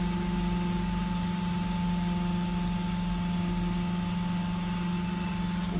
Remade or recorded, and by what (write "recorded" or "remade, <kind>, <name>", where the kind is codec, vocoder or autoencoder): recorded